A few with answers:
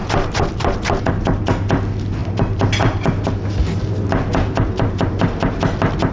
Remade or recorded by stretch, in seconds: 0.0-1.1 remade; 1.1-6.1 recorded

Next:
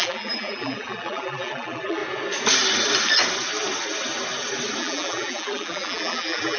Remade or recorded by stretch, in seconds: 0.0-2.0 remade; 2.0-4.8 recorded; 4.8-6.6 remade

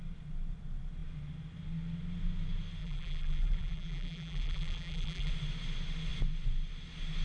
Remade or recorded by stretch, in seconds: 0.0-2.8 recorded; 2.8-5.3 remade; 5.3-7.2 recorded

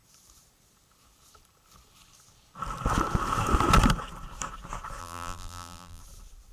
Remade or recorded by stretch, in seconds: 0.0-5.0 recorded; 5.0-6.0 remade; 6.0-6.5 recorded